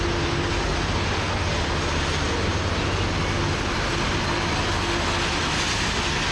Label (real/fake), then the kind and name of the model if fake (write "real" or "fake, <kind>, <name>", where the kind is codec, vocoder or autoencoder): real